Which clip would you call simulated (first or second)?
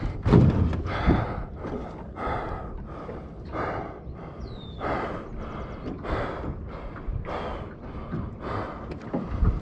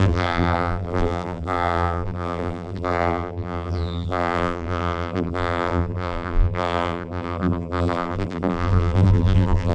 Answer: second